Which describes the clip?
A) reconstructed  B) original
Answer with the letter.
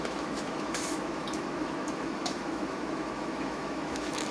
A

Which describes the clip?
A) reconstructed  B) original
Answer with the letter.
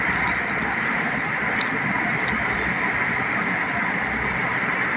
B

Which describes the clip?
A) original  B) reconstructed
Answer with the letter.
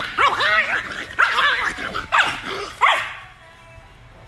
A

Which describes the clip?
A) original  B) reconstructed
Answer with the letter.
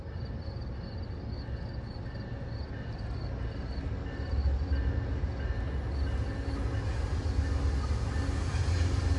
A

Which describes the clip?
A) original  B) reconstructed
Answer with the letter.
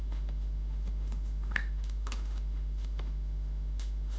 B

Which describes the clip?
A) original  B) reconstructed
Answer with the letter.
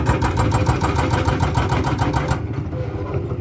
A